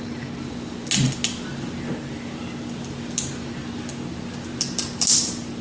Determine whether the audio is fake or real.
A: real